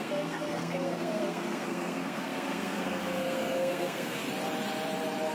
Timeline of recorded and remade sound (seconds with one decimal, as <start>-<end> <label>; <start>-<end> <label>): 0.0-4.2 remade; 4.2-5.3 recorded